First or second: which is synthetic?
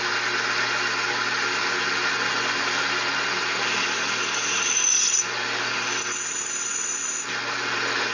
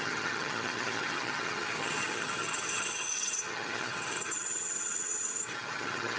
second